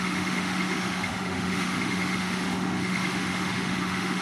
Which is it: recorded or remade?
remade